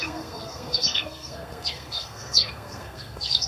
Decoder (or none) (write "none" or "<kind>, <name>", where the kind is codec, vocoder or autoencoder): codec, SNAC